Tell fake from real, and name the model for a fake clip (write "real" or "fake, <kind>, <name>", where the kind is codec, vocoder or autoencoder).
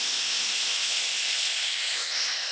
fake, codec, ZipCodec